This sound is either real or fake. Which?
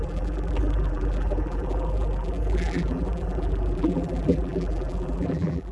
fake